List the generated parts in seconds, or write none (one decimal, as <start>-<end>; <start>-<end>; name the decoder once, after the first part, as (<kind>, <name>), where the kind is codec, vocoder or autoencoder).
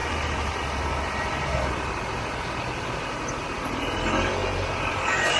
0.0-3.2 (vocoder, BigVGAN v2); 4.4-5.4